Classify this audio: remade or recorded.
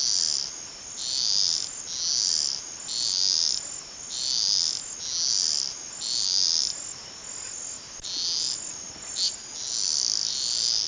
recorded